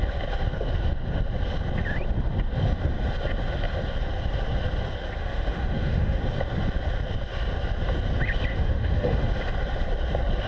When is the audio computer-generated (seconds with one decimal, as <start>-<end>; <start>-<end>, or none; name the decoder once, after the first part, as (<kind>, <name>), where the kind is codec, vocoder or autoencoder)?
5.2-6.2 (autoencoder, DAC-VAE); 8.5-9.3